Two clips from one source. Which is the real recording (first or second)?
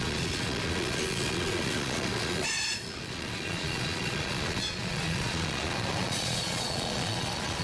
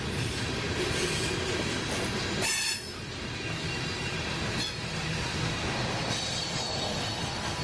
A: second